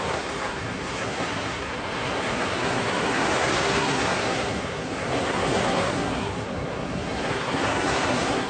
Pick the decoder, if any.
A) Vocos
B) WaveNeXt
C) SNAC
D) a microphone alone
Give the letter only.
C